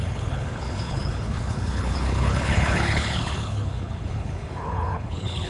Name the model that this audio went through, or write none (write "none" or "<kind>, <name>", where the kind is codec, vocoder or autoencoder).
codec, HILCodec